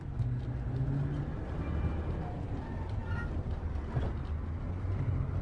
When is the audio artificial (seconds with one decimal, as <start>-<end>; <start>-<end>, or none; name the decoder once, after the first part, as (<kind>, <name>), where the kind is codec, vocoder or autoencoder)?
none